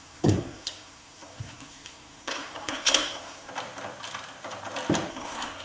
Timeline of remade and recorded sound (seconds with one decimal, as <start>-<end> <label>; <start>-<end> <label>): 0.0-3.5 remade; 3.5-5.1 recorded; 5.1-5.6 remade